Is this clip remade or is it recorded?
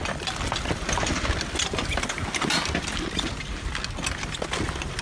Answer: recorded